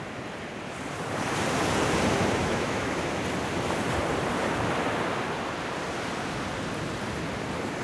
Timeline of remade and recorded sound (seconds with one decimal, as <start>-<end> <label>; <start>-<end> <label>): 0.0-2.4 recorded; 2.4-3.2 remade; 3.2-7.8 recorded